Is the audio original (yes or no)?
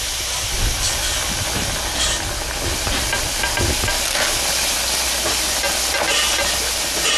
yes